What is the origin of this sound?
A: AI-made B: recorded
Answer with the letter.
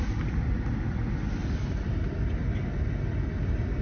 B